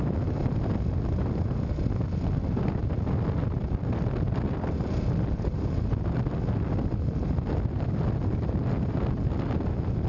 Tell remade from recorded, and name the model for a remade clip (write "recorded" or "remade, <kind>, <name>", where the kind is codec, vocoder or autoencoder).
recorded